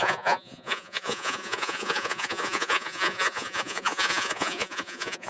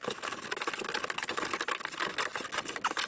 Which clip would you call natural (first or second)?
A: second